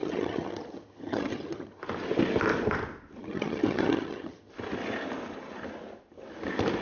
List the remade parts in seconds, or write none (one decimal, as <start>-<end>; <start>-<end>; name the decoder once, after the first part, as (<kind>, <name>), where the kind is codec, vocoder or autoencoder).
0.0-1.8 (vocoder, HiFi-GAN); 3.2-4.5